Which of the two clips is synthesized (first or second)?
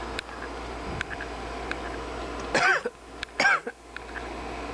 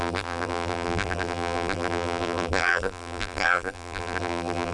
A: second